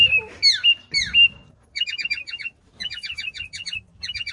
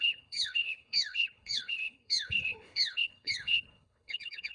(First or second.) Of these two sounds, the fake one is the second